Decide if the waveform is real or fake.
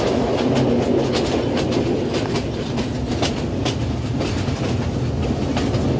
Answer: real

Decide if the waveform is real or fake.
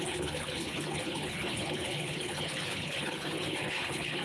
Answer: fake